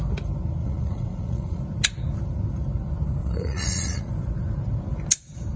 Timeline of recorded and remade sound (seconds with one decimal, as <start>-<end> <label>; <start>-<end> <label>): 0.0-0.6 recorded; 0.6-1.6 remade; 1.6-3.2 recorded; 3.2-4.1 remade; 4.1-5.6 recorded